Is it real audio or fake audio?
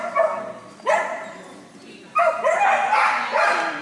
real